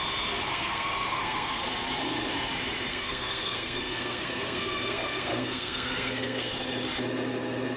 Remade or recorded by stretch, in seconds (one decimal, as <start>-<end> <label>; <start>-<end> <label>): 0.0-0.5 recorded; 0.5-1.6 remade; 1.6-2.9 recorded; 2.9-6.5 remade; 6.5-7.8 recorded